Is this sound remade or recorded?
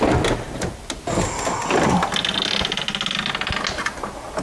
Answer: recorded